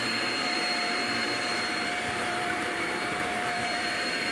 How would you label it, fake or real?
fake